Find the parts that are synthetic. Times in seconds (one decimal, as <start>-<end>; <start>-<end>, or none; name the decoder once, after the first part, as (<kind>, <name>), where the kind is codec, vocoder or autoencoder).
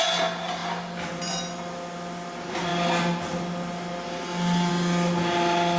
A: none